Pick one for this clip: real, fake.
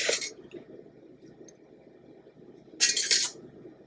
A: real